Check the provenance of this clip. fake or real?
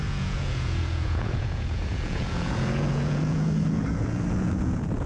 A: fake